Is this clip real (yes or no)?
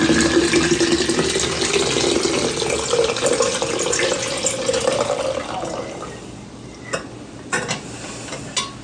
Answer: yes